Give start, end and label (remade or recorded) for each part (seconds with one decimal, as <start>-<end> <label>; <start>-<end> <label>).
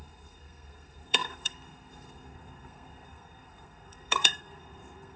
0.0-5.2 remade